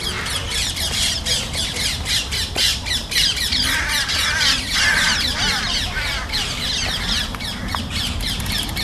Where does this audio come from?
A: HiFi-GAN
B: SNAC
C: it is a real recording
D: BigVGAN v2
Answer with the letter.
D